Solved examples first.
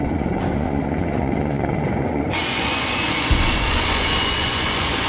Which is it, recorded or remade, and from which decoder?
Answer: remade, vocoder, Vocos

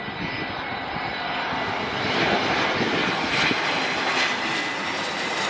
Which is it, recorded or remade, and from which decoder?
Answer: recorded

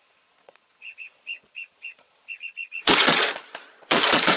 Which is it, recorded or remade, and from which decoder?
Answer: remade, vocoder, Vocos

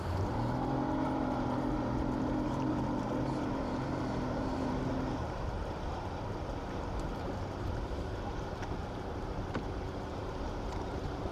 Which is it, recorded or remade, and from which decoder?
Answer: remade, vocoder, BigVGAN v2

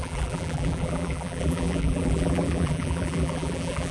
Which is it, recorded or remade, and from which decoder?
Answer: remade, vocoder, BigVGAN v2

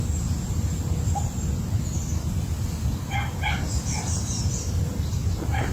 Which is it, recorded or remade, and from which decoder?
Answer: remade, vocoder, BigVGAN v2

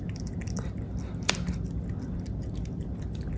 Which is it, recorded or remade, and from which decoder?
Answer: recorded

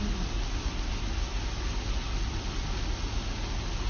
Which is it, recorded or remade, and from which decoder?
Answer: recorded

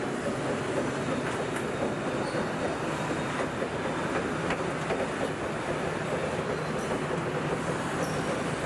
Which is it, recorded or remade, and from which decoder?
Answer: recorded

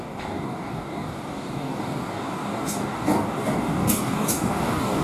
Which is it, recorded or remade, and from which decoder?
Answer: remade, codec, DAC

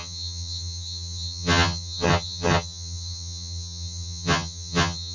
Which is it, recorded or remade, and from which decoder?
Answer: remade, vocoder, HiFi-GAN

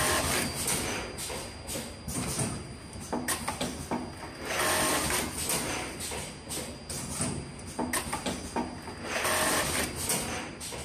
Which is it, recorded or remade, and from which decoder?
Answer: recorded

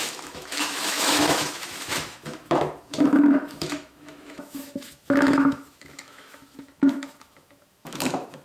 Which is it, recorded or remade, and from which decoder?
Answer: remade, autoencoder, DAC-VAE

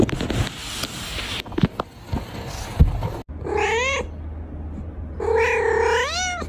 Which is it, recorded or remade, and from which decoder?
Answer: recorded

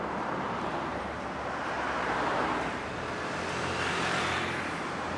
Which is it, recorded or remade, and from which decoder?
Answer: remade, vocoder, BigVGAN v2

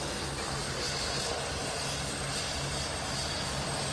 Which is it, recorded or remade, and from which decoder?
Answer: recorded